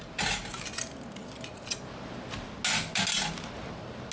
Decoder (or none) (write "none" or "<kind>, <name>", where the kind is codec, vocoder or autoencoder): none